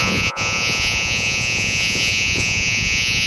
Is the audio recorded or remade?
remade